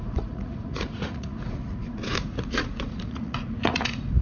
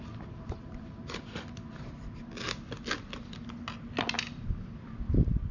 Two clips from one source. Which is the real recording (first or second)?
second